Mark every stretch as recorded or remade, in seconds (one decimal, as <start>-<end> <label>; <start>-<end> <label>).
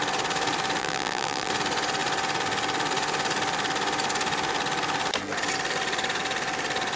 0.0-0.8 recorded; 0.8-1.5 remade; 1.5-7.0 recorded